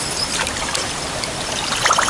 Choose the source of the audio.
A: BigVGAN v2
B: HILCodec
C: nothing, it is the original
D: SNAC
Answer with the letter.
C